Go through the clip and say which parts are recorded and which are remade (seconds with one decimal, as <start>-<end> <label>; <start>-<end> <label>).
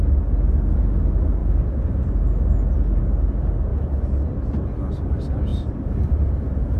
0.0-5.5 recorded; 5.5-6.3 remade; 6.3-6.8 recorded